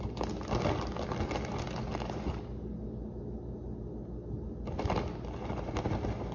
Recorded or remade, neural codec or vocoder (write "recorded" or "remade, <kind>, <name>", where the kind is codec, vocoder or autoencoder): recorded